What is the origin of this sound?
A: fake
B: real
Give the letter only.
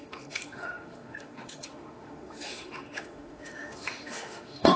A